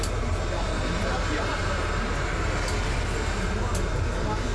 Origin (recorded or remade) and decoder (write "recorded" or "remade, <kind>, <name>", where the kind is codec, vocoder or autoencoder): recorded